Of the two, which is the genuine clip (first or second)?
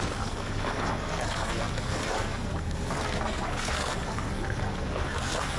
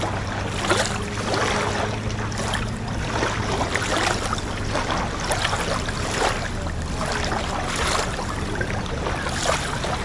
second